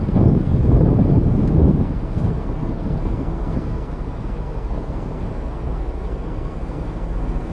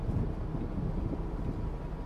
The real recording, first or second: second